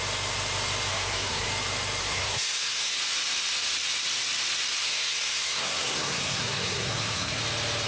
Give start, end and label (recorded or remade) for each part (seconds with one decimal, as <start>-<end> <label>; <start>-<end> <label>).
0.0-0.9 recorded; 0.9-1.5 remade; 1.5-2.0 recorded; 2.0-2.9 remade; 2.9-4.8 recorded; 4.8-7.4 remade; 7.4-7.9 recorded